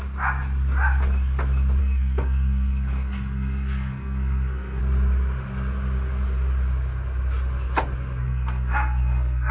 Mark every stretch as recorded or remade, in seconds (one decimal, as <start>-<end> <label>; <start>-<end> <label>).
0.0-1.8 recorded; 1.8-4.8 remade; 4.8-8.2 recorded; 8.2-9.5 remade